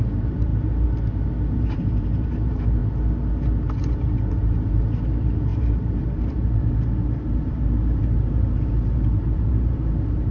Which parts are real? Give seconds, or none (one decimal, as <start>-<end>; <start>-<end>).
0.5-1.5; 2.8-3.8